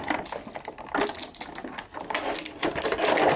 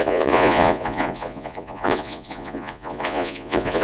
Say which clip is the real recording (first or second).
first